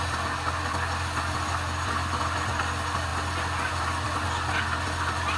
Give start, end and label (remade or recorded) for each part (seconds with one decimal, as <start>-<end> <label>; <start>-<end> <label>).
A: 0.0-5.4 recorded